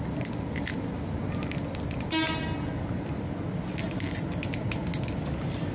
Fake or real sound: real